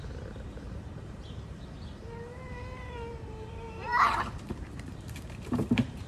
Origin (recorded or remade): remade